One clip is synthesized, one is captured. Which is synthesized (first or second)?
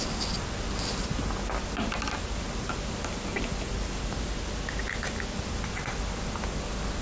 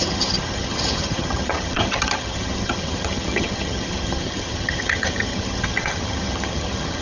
second